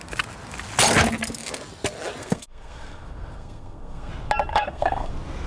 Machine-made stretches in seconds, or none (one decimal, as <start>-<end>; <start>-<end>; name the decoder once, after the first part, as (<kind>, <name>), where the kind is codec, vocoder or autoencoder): 2.2-4.1 (codec, SNAC); 4.5-5.1